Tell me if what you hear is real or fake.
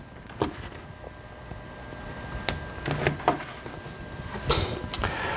real